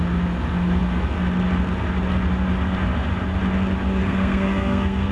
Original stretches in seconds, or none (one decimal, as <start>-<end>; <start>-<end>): 0.0-4.0